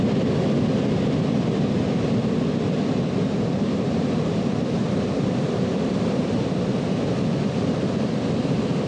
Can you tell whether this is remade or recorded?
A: recorded